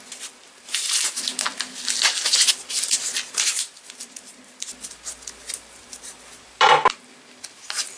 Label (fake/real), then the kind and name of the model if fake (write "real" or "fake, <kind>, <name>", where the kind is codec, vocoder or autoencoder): real